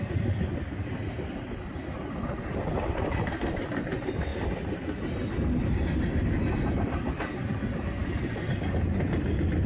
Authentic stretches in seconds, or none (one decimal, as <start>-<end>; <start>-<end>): 2.5-3.4; 4.3-5.6

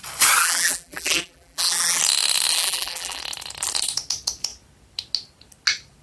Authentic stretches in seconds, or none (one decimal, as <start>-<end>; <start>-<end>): 0.0-0.4; 2.0-2.5; 3.2-6.0